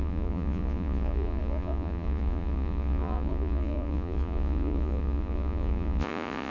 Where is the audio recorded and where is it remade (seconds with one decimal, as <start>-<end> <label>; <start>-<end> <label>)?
0.0-6.5 remade